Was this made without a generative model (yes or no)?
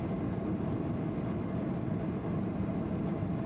yes